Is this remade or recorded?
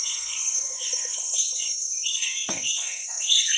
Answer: remade